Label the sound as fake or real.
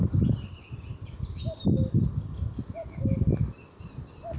real